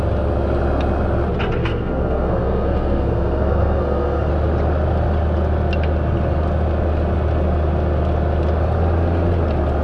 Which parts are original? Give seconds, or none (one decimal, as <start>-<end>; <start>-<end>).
0.0-1.6; 4.3-9.8